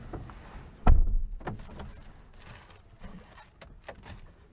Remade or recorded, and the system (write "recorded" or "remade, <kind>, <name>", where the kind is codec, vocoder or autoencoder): recorded